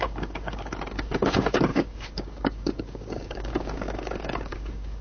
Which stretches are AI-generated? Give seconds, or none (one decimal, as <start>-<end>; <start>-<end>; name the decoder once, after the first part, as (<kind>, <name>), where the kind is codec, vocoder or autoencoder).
0.0-5.0 (codec, DAC)